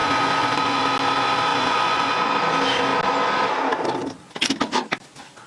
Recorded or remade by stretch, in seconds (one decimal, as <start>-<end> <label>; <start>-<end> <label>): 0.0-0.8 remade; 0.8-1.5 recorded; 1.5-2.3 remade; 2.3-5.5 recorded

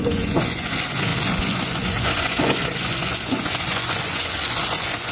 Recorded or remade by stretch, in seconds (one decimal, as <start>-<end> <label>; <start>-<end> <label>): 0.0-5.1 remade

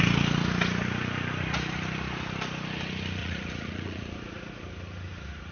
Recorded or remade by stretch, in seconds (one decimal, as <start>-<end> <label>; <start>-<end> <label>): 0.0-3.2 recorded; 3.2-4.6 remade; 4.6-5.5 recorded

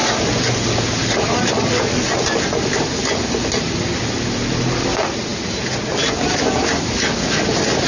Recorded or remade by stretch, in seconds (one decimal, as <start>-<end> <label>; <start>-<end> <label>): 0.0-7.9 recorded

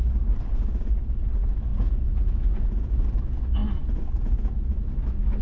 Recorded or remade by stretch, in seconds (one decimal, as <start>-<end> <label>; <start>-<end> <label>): 0.0-1.7 recorded; 1.7-3.0 remade; 3.0-5.4 recorded